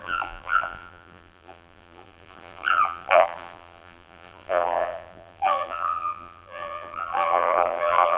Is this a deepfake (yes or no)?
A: yes